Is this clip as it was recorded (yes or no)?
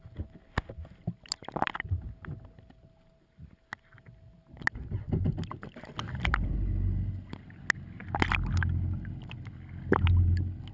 yes